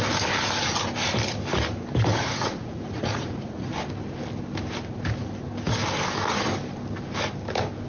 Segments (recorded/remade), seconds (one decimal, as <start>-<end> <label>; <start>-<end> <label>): 0.0-2.1 recorded; 2.1-3.7 remade; 3.7-7.9 recorded